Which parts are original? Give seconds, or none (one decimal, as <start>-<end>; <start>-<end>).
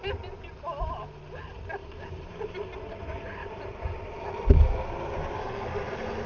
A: 0.0-1.8; 2.4-6.3